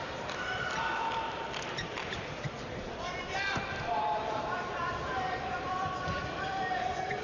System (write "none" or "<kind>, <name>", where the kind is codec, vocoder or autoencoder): vocoder, BigVGAN v2